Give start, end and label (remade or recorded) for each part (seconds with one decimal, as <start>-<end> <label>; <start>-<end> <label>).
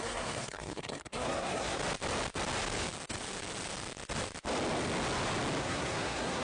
0.0-1.8 remade; 1.8-5.6 recorded; 5.6-6.4 remade